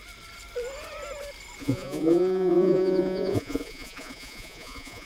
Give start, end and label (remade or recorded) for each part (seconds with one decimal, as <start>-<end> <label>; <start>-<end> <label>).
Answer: 0.0-1.6 recorded; 1.6-5.1 remade